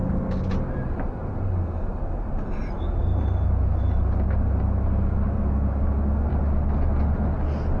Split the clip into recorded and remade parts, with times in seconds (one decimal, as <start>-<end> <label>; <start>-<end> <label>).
0.0-7.8 recorded